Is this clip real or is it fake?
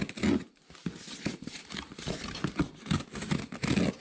real